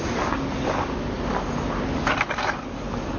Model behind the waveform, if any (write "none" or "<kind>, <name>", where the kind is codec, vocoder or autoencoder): none